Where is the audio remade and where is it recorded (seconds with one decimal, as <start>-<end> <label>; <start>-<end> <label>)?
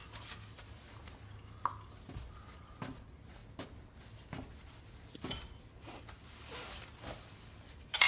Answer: 0.0-8.1 recorded